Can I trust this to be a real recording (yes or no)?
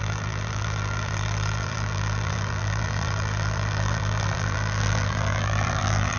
no